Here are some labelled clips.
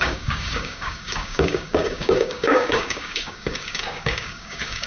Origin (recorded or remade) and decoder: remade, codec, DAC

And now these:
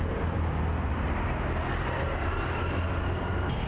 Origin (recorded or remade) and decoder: recorded